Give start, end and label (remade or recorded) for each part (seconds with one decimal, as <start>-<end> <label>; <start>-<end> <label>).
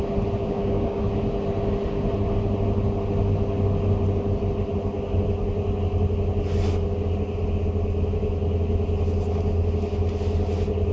0.0-0.4 recorded; 0.4-1.0 remade; 1.0-10.9 recorded